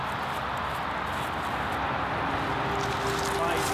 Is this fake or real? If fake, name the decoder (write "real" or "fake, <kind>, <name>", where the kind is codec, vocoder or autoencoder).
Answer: real